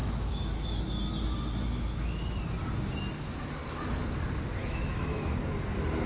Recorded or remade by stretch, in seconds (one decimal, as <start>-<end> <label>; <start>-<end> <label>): 0.0-0.8 remade; 0.8-1.6 recorded; 1.6-2.4 remade; 2.4-4.6 recorded; 4.6-5.3 remade; 5.3-6.1 recorded